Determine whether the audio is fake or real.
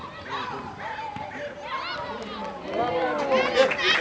real